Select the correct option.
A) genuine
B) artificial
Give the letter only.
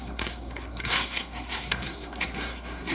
B